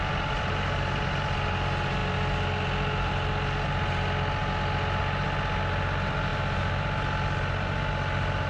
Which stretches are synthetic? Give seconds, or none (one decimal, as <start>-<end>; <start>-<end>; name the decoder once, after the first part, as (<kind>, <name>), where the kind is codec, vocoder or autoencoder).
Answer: none